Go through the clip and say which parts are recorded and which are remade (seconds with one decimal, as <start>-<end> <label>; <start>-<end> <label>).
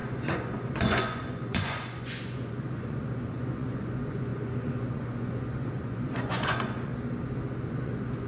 0.0-6.9 remade; 6.9-7.7 recorded; 7.7-8.3 remade